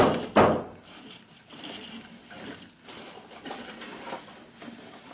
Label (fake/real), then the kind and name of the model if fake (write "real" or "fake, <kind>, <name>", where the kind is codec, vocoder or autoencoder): real